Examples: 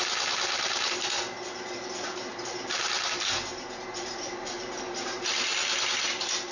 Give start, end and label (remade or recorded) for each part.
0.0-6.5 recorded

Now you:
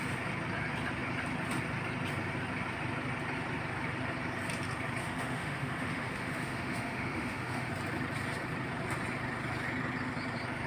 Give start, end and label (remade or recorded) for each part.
0.0-5.0 recorded; 5.0-7.7 remade; 7.7-10.7 recorded

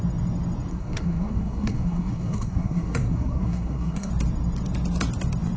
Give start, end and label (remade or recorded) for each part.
0.0-0.7 recorded; 0.7-4.1 remade; 4.1-5.6 recorded

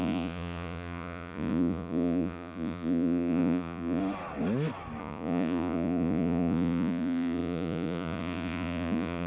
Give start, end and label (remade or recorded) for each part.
0.0-4.0 remade; 4.0-5.0 recorded; 5.0-9.3 remade